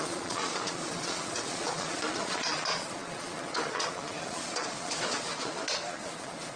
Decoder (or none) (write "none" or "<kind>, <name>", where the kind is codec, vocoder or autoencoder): vocoder, Vocos